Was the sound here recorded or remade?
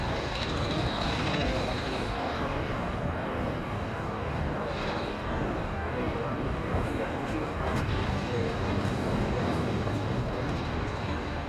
remade